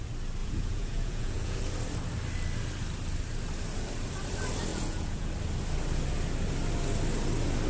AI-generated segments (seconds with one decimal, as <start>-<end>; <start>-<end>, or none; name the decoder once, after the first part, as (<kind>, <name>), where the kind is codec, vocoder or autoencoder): 0.4-1.6 (vocoder, Vocos); 4.7-5.3